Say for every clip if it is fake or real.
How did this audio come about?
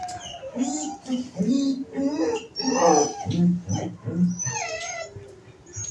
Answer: real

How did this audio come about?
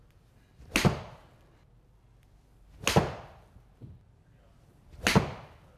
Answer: real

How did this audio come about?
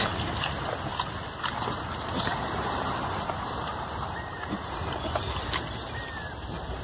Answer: fake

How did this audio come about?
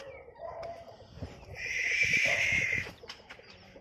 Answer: fake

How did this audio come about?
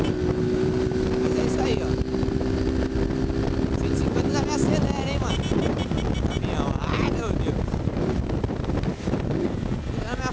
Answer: real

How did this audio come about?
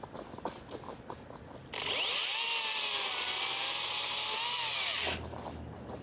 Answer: real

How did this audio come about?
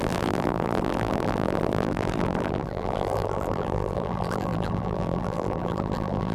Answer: fake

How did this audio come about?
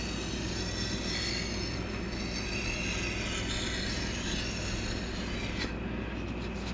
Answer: real